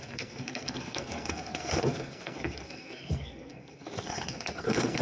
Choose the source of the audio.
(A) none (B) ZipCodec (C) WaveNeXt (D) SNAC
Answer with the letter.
D